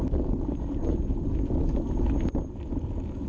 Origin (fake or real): real